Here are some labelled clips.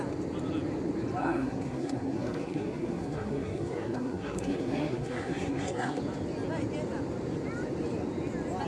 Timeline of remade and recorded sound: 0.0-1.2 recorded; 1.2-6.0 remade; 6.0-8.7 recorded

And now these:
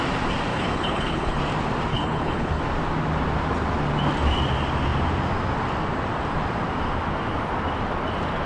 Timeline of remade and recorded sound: 0.0-0.5 recorded; 0.5-1.4 remade; 1.4-1.9 recorded; 1.9-2.6 remade; 2.6-8.5 recorded

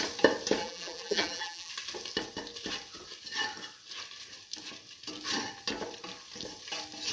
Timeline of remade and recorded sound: 0.0-0.6 recorded; 0.6-1.7 remade; 1.7-7.1 recorded

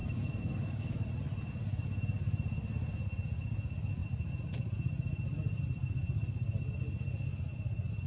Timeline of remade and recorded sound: 0.0-1.1 remade; 1.1-8.1 recorded

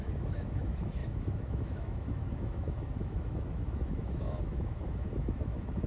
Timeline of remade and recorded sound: 0.0-5.9 remade

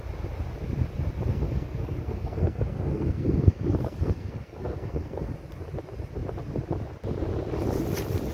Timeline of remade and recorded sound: 0.0-1.3 recorded; 1.3-5.3 remade; 5.3-8.3 recorded

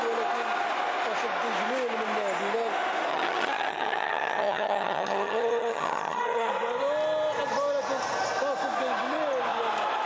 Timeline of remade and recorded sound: 0.0-3.1 recorded; 3.1-6.5 remade; 6.5-10.1 recorded

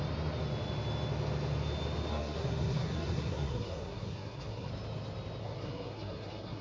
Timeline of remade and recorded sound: 0.0-2.1 recorded; 2.1-4.7 remade; 4.7-5.4 recorded; 5.4-6.6 remade